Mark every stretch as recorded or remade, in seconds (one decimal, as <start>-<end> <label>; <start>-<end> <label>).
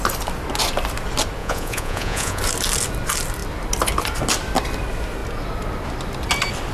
0.0-1.4 recorded; 1.4-2.4 remade; 2.4-6.7 recorded